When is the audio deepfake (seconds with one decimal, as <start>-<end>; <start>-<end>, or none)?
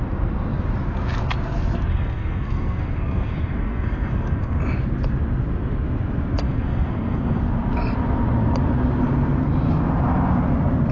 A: 1.9-4.6; 6.4-7.4